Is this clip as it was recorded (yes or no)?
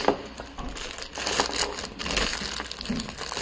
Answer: yes